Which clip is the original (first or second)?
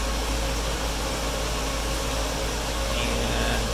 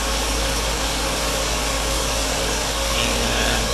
first